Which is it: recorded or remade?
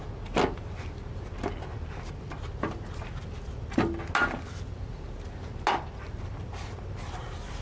recorded